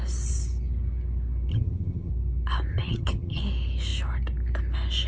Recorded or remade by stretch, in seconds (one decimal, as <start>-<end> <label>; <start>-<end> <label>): 0.0-1.5 recorded; 1.5-2.1 remade; 2.1-2.7 recorded; 2.7-3.4 remade; 3.4-5.1 recorded